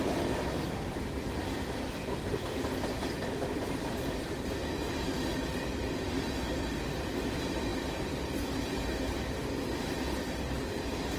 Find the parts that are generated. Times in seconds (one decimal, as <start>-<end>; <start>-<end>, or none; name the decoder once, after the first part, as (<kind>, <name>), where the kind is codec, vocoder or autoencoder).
none